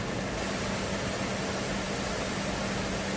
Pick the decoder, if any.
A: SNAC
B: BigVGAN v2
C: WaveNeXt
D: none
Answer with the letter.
D